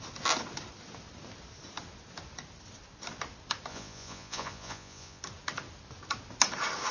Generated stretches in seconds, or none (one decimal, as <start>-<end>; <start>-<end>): 3.7-5.2